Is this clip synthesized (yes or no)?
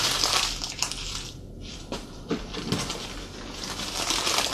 yes